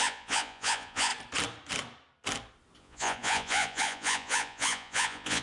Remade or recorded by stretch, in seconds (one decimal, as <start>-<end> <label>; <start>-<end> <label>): 0.0-1.1 remade; 1.1-2.8 recorded; 2.8-5.4 remade